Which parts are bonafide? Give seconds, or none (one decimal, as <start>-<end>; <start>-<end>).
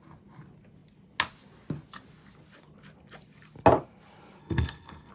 0.0-4.4